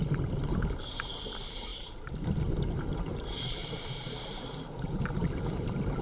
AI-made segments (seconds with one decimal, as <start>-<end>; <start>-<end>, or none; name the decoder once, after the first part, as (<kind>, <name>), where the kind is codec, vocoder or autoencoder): 3.1-4.4 (vocoder, BigVGAN v2)